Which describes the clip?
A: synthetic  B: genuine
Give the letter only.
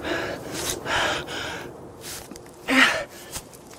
A